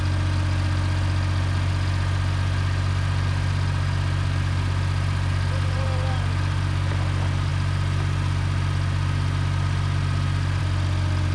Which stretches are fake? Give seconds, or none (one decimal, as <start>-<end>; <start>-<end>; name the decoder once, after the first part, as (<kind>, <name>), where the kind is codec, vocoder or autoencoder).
none